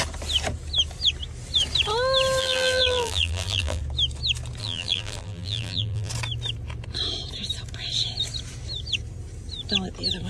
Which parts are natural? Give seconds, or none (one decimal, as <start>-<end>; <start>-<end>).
0.0-2.4; 3.8-4.6; 6.1-10.3